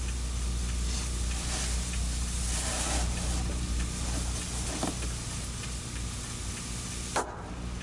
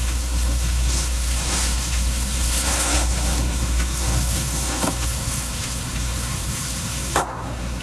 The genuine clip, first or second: first